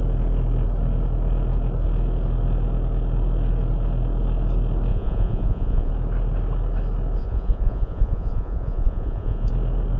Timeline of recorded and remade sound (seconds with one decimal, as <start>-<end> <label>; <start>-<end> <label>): 0.0-4.9 recorded; 4.9-5.9 remade; 5.9-7.2 recorded; 7.2-9.5 remade; 9.5-10.0 recorded